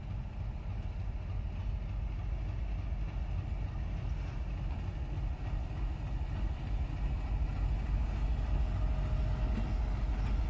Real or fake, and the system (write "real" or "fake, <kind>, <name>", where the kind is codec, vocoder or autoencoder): real